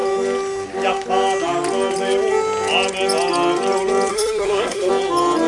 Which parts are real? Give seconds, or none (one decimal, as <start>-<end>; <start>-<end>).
0.0-4.1; 4.9-5.5